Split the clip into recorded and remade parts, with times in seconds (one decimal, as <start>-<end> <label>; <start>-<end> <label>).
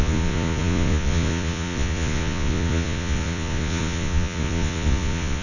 0.0-5.4 remade